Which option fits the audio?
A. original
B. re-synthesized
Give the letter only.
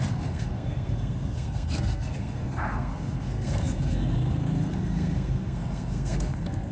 B